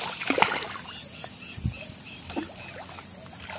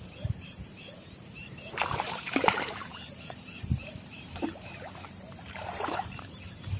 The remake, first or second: second